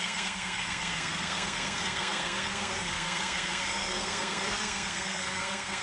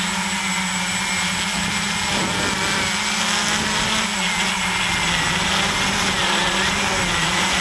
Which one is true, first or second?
second